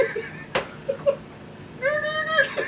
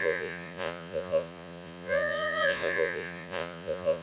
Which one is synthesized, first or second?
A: second